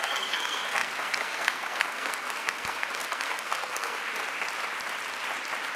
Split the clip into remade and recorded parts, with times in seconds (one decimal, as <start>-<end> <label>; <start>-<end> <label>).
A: 0.0-4.0 remade; 4.0-5.8 recorded